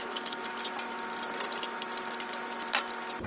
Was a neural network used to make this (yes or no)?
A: no